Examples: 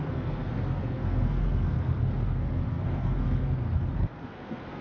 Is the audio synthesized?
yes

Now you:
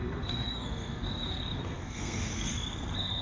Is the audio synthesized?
yes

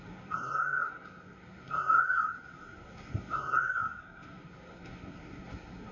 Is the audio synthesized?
yes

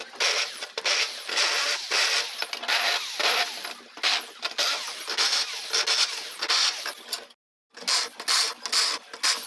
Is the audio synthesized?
no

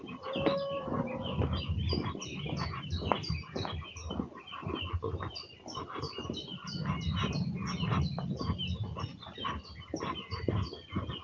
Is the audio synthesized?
no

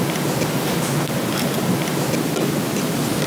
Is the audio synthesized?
no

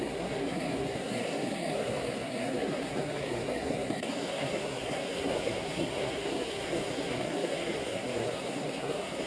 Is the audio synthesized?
yes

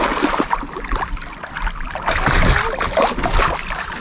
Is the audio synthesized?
no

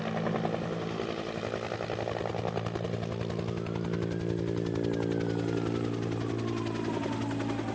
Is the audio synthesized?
no